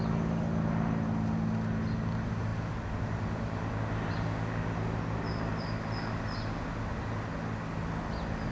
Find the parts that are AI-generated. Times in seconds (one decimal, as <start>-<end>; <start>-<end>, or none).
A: none